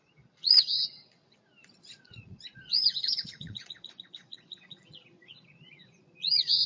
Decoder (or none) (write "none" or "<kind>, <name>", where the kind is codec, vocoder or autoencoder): vocoder, Vocos